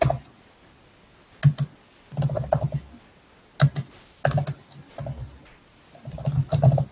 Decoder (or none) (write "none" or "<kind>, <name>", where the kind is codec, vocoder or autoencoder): none